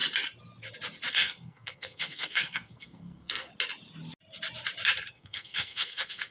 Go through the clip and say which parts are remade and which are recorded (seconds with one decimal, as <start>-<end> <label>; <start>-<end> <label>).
0.0-1.1 recorded; 1.1-3.5 remade; 3.5-5.1 recorded; 5.1-6.3 remade